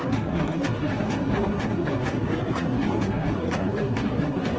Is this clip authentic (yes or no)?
no